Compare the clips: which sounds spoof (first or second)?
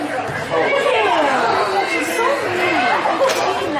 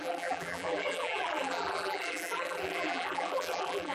second